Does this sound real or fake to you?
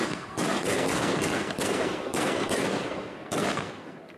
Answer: fake